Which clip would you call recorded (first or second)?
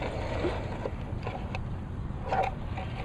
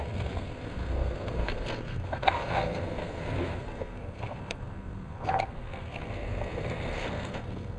first